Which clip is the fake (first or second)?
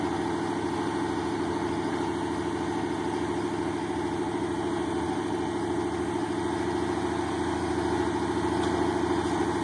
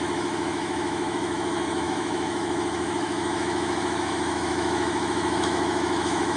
second